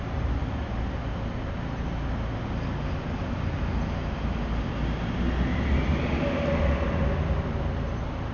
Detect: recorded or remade recorded